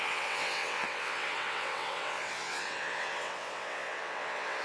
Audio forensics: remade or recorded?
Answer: remade